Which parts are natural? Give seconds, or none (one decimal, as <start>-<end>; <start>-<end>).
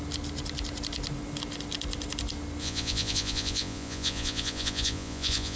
0.0-2.6